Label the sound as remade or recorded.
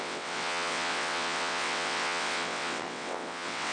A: remade